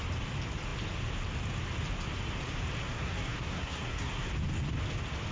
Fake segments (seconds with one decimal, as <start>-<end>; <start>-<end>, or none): 2.8-4.3